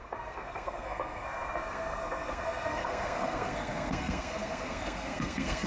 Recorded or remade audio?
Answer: remade